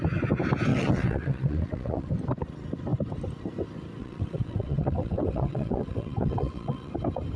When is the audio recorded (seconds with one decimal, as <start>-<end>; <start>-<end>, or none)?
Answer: 0.0-0.7; 2.1-4.0; 6.9-7.4